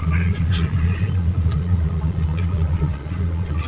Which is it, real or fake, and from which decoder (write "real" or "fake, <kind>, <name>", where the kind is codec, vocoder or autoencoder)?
fake, vocoder, Vocos